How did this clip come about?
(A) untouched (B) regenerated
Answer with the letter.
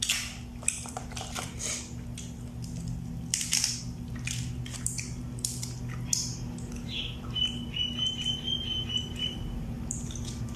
B